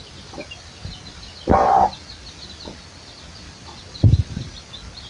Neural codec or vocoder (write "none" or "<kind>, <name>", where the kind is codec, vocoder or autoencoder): none